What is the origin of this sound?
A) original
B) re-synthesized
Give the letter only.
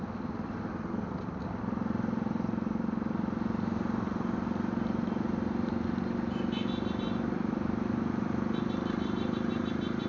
A